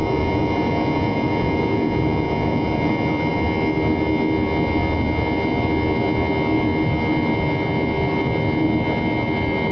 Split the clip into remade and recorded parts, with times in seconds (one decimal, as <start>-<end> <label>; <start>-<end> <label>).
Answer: 0.0-2.9 remade; 2.9-9.7 recorded